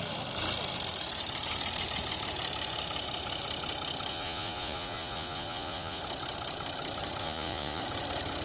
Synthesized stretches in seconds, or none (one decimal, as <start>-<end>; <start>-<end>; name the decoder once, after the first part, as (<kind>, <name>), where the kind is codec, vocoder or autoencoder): 4.1-6.0 (vocoder, Vocos); 7.2-7.8